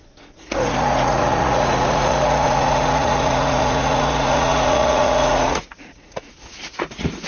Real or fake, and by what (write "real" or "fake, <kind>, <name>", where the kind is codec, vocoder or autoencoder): fake, vocoder, Vocos